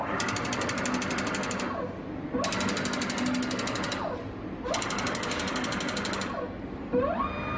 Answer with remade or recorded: recorded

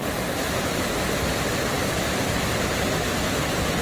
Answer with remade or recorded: recorded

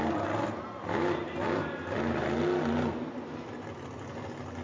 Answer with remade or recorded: recorded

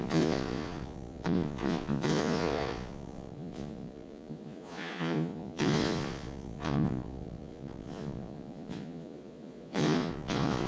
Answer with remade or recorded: remade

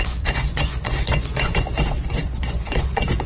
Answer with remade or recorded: remade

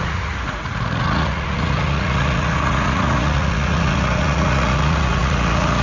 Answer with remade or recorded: remade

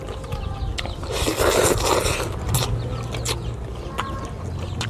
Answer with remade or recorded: recorded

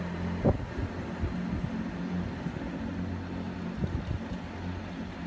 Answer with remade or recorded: recorded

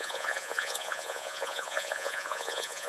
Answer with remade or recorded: remade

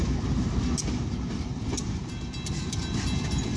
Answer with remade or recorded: recorded